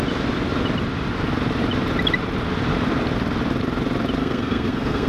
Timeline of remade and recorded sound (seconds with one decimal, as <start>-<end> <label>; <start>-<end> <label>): 0.0-4.2 recorded; 4.2-5.1 remade